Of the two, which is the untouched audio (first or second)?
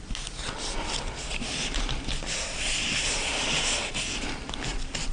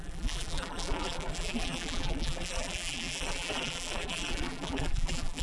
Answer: first